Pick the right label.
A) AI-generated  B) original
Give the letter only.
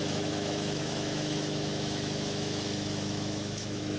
A